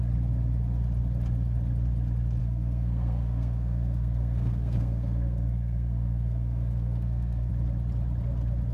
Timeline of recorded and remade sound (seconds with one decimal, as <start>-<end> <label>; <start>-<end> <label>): 0.0-2.4 recorded; 2.4-7.5 remade; 7.5-8.7 recorded